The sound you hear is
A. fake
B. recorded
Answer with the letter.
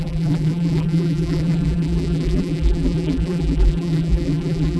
A